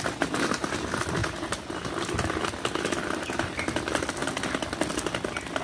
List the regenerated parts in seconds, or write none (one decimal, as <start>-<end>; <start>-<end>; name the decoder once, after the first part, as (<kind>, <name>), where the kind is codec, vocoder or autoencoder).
none